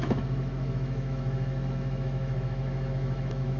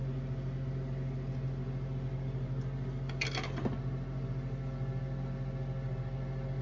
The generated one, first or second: first